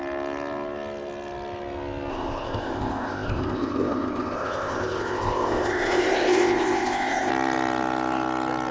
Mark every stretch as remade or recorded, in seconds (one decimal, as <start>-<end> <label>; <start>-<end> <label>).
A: 0.0-2.1 recorded; 2.1-7.3 remade; 7.3-8.7 recorded